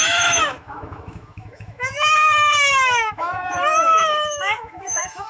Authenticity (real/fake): fake